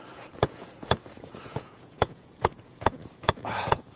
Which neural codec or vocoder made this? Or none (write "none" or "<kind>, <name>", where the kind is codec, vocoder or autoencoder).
vocoder, Vocos